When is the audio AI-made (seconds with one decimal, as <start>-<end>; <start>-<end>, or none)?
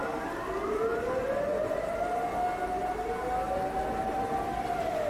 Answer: none